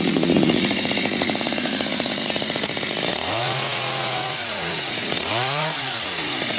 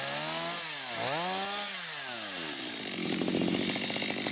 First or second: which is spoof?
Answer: first